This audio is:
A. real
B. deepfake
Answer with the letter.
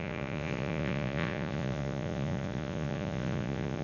B